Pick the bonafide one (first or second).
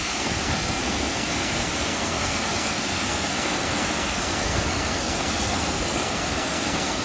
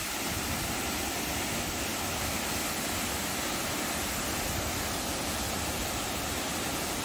second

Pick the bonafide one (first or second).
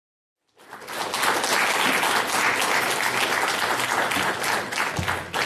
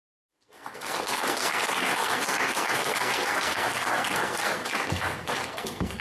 first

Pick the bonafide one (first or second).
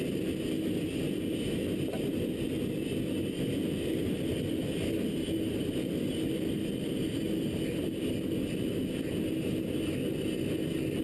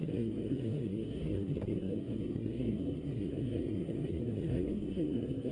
first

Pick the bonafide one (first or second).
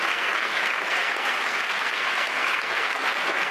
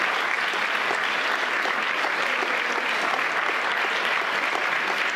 second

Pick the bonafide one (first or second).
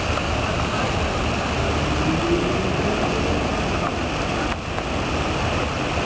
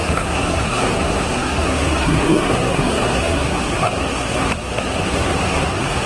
first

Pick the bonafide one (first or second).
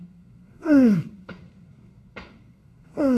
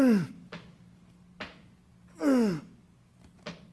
second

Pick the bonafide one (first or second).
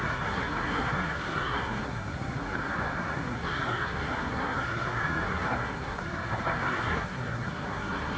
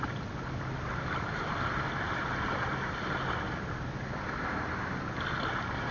second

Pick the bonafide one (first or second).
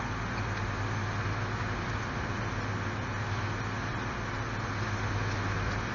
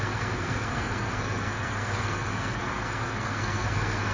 first